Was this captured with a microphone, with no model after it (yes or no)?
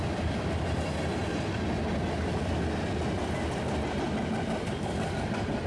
yes